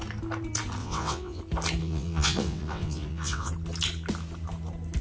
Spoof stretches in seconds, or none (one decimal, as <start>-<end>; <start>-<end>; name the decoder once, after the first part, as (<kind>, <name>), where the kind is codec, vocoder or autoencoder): 0.8-1.4 (vocoder, WaveNeXt); 1.8-3.5